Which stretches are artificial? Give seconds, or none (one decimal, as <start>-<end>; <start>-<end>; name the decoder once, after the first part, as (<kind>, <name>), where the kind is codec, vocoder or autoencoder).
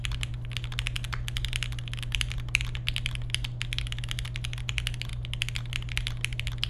none